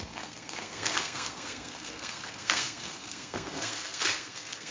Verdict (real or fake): fake